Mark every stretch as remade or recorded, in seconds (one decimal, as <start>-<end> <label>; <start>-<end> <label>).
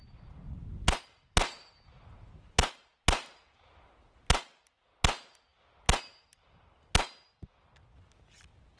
0.0-8.8 recorded